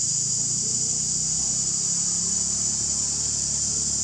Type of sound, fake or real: real